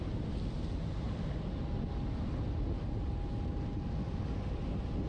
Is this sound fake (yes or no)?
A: no